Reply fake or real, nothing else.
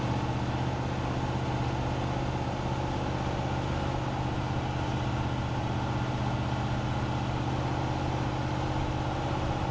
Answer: real